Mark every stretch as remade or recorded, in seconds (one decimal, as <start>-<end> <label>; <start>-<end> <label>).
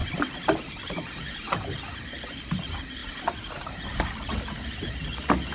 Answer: 0.0-5.5 recorded